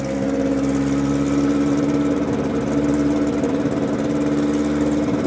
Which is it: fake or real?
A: real